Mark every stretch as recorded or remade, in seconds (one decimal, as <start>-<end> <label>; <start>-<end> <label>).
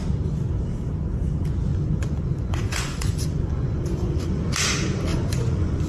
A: 0.0-1.7 recorded; 1.7-4.5 remade; 4.5-5.1 recorded; 5.1-5.9 remade